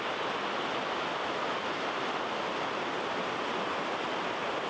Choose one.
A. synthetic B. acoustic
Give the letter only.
B